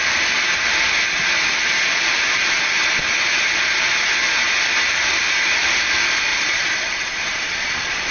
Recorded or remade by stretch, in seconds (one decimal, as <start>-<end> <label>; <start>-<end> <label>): 0.0-6.3 recorded; 6.3-8.1 remade